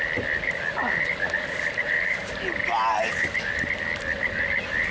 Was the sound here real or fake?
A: real